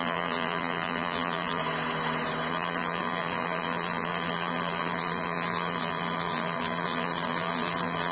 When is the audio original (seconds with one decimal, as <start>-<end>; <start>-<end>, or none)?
1.6-2.5